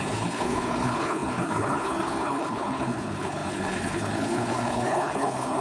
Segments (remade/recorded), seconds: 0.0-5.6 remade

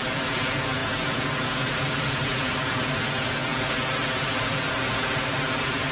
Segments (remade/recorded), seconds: 0.0-0.8 recorded; 0.8-3.0 remade; 3.0-5.9 recorded

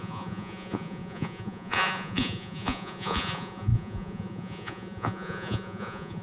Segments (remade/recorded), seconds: 0.0-6.2 remade

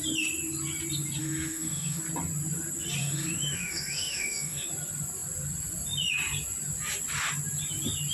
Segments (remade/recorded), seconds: 0.0-1.2 recorded; 1.2-2.0 remade; 2.0-3.0 recorded; 3.0-4.7 remade; 4.7-8.1 recorded

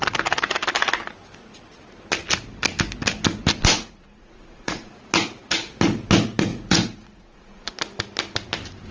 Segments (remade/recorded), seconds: 0.0-3.7 recorded; 3.7-4.9 remade; 4.9-6.5 recorded; 6.5-7.7 remade; 7.7-8.9 recorded

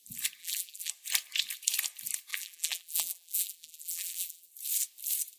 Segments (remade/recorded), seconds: 0.0-0.4 recorded; 0.4-0.9 remade; 0.9-2.3 recorded; 2.3-4.5 remade; 4.5-5.4 recorded

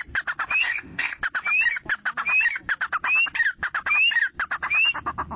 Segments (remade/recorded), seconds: 0.0-0.6 recorded; 0.6-1.2 remade; 1.2-5.4 recorded

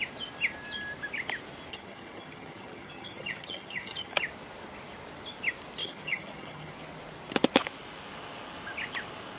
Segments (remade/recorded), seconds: 0.0-1.7 recorded; 1.7-4.2 remade; 4.2-5.8 recorded; 5.8-6.7 remade; 6.7-9.4 recorded